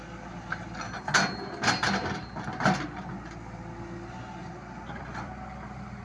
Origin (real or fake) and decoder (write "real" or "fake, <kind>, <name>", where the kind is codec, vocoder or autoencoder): real